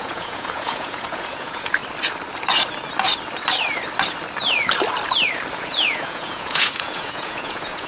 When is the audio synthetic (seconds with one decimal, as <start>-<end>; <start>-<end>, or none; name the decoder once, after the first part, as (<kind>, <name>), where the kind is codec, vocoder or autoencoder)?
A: 0.0-1.8 (vocoder, Vocos); 5.5-7.9